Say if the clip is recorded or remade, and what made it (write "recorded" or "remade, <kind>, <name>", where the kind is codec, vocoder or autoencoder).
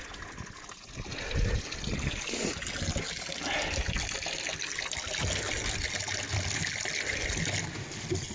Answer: recorded